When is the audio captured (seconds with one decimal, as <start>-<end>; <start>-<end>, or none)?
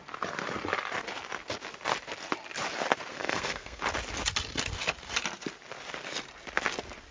0.0-3.1; 3.8-7.1